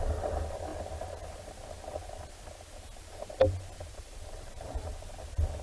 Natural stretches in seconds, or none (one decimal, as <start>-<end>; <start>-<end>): 0.0-3.9; 4.9-5.6